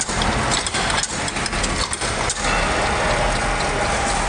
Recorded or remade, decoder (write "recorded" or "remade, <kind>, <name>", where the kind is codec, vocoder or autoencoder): recorded